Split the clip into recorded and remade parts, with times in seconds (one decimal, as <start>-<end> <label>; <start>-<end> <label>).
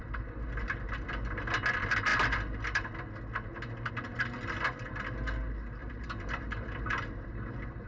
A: 0.0-5.8 recorded; 5.8-6.9 remade; 6.9-7.9 recorded